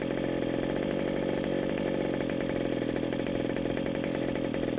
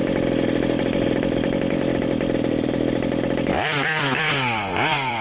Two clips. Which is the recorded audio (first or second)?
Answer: first